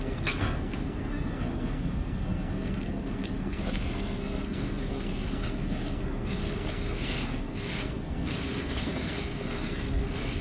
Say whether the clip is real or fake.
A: fake